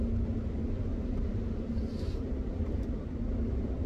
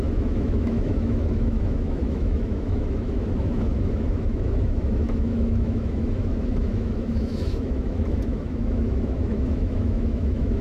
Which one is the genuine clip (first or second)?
first